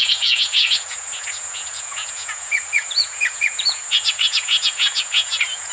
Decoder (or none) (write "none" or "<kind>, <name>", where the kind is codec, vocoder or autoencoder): vocoder, Vocos